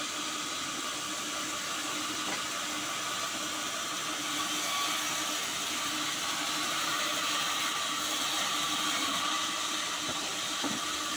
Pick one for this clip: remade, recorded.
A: recorded